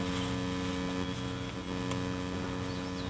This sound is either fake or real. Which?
real